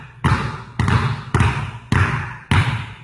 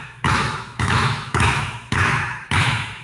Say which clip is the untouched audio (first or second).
first